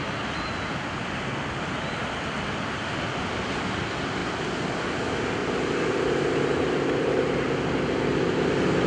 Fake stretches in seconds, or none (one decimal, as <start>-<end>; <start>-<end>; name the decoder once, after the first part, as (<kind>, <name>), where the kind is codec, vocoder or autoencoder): 5.4-8.9 (vocoder, BigVGAN v2)